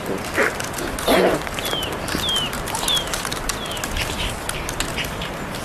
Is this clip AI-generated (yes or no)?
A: no